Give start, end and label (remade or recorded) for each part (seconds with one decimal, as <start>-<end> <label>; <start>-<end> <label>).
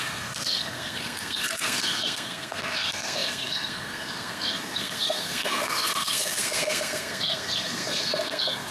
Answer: 0.0-8.7 remade